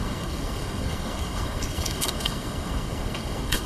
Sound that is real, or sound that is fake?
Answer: fake